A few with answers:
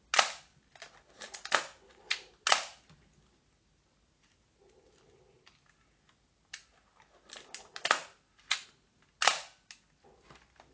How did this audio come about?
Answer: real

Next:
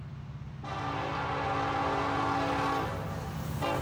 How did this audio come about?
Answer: real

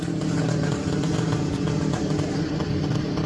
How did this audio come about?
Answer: real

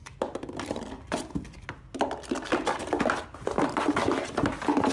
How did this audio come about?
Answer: real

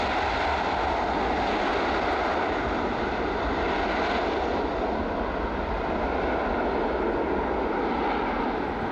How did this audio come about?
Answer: real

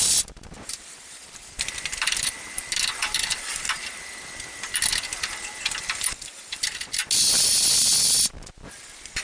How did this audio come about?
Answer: real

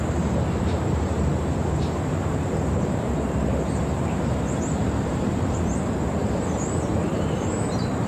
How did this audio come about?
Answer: fake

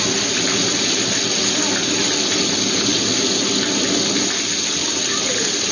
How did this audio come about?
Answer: real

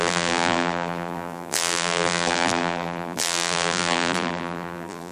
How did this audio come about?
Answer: fake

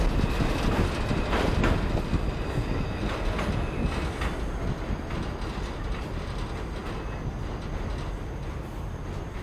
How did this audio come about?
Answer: real